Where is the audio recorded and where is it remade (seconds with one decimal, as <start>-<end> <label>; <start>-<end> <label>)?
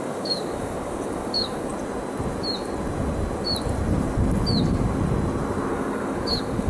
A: 0.0-1.7 remade; 1.7-5.7 recorded; 5.7-6.7 remade